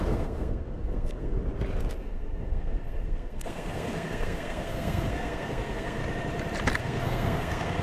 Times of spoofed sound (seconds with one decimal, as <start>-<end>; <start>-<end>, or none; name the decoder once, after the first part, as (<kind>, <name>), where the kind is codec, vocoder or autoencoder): 0.0-1.4 (codec, SNAC); 2.0-6.0; 6.8-7.8